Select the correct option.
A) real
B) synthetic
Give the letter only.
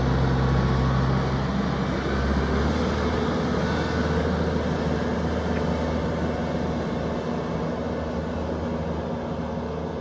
A